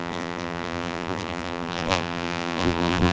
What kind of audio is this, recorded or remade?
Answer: remade